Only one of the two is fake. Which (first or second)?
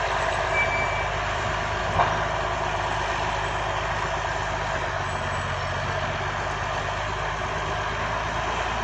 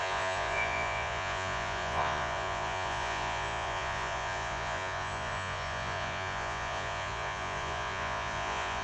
second